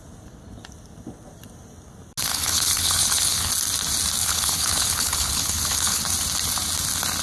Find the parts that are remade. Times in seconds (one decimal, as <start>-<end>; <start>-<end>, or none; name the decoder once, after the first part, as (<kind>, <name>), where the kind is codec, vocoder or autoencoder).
2.3-3.5 (codec, HILCodec); 4.2-6.0